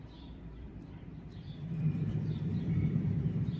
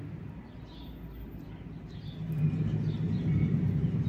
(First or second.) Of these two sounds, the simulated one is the first